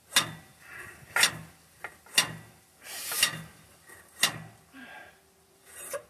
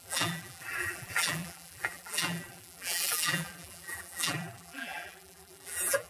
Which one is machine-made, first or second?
second